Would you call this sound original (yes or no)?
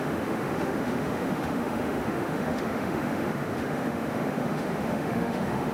no